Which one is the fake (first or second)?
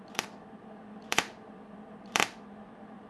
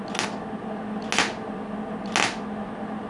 first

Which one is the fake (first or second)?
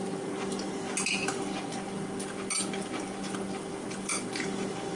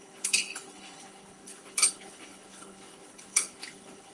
second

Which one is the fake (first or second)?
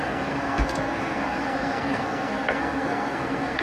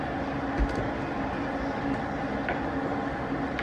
first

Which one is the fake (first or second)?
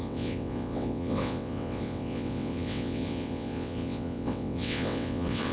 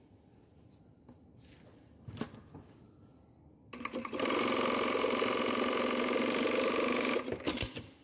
first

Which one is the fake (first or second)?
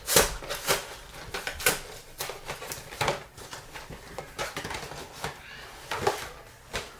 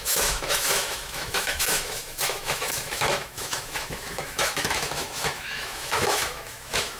second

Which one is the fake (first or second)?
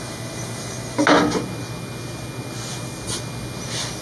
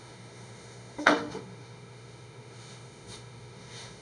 second